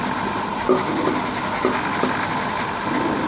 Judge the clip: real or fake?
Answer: real